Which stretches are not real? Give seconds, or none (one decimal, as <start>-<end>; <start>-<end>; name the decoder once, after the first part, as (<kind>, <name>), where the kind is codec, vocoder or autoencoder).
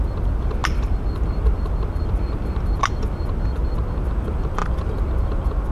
none